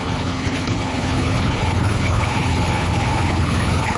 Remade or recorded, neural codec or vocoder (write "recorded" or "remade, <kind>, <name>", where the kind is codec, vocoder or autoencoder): remade, codec, HILCodec